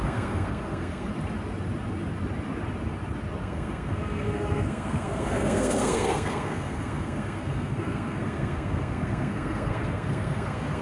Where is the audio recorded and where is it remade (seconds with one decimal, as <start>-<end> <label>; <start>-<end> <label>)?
0.0-1.1 remade; 1.1-3.4 recorded; 3.4-10.8 remade